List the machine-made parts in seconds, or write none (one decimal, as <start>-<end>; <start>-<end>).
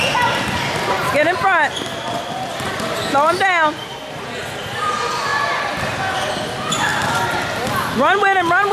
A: none